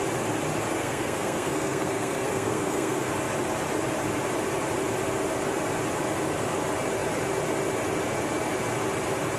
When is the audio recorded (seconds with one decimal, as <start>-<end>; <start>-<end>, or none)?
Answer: 0.0-0.8; 3.1-9.4